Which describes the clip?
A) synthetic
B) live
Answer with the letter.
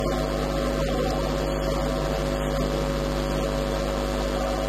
B